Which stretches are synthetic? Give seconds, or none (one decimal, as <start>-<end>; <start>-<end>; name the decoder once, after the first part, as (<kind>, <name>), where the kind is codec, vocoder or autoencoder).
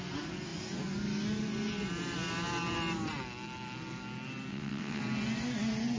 4.5-5.0 (vocoder, WaveNeXt)